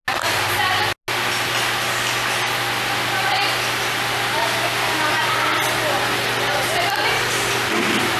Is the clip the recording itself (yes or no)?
yes